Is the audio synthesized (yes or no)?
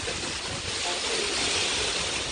no